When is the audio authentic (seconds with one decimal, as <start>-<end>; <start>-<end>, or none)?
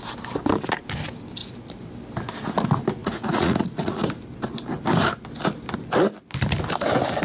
0.0-3.0; 4.0-7.2